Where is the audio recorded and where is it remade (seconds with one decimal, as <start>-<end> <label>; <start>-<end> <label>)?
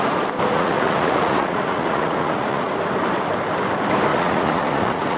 0.0-0.5 recorded; 0.5-2.7 remade; 2.7-4.1 recorded; 4.1-5.2 remade